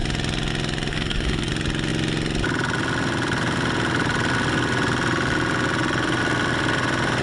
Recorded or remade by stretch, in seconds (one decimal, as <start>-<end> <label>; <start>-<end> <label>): 0.0-0.9 recorded; 0.9-1.5 remade; 1.5-7.2 recorded